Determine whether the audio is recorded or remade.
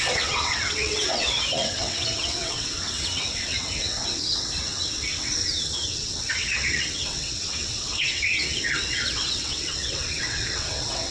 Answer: remade